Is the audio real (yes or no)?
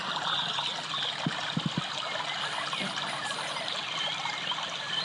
yes